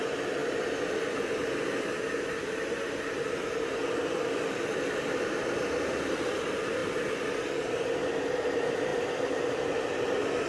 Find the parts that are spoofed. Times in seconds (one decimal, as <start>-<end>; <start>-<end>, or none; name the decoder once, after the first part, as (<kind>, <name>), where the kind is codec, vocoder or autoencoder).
0.0-0.4 (vocoder, BigVGAN v2); 2.2-3.8; 5.5-6.8; 8.1-8.9; 9.6-10.5